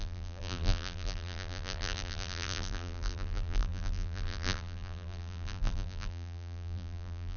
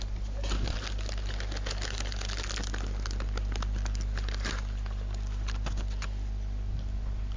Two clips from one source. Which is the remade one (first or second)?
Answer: first